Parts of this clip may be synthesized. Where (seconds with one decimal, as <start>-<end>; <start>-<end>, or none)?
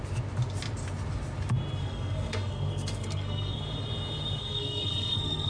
1.8-3.6; 4.4-5.5